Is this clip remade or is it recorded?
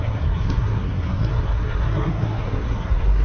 remade